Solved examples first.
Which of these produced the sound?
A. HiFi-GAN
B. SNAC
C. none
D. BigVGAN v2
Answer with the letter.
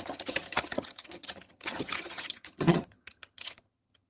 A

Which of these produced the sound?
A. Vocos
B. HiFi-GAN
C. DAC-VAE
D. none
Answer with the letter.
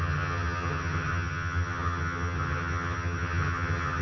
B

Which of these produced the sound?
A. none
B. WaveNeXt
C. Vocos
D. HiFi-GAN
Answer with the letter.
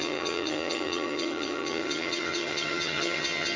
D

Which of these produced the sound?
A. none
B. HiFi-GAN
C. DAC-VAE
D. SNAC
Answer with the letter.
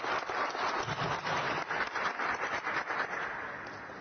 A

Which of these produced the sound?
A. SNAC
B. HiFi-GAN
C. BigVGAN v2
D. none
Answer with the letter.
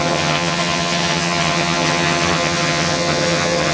B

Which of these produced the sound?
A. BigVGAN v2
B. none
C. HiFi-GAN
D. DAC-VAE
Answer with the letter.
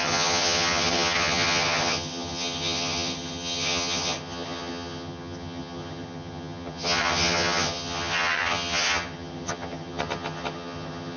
C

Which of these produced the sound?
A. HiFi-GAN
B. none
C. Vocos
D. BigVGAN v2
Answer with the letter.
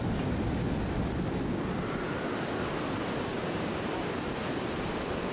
B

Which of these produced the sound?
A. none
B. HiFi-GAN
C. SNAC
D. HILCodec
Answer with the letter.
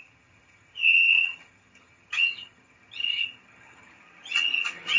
B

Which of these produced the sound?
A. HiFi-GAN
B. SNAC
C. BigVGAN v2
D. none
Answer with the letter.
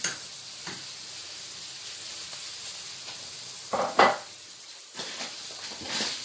D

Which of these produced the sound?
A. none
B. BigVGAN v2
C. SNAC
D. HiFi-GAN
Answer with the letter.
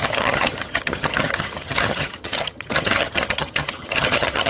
D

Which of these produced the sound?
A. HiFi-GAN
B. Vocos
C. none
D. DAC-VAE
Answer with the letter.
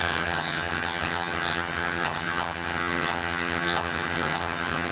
A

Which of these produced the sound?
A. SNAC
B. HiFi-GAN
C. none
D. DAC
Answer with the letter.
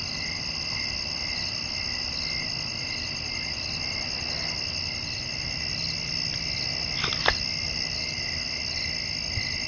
C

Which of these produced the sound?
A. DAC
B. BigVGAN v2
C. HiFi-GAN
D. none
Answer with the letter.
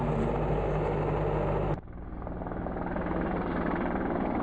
D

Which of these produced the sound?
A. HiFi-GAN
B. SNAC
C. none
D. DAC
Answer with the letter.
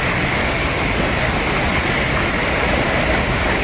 C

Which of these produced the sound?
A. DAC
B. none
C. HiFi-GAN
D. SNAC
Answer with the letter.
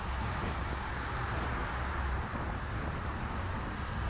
B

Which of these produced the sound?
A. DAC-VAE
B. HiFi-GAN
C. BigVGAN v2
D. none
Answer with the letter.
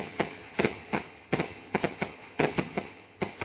B